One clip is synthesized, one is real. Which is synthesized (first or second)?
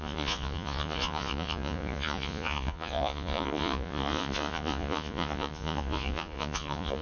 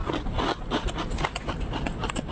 first